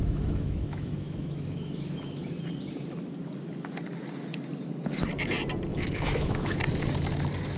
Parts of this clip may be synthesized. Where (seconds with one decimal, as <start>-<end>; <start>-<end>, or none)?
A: 0.0-2.2; 5.7-6.6